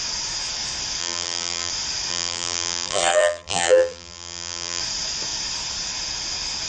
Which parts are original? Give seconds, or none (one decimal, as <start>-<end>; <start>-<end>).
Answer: 0.0-1.0; 1.7-2.1; 4.8-6.7